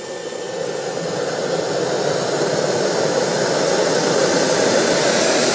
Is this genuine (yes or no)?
yes